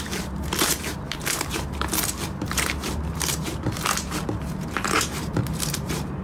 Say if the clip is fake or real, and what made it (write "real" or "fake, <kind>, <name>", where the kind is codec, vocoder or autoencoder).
fake, vocoder, BigVGAN v2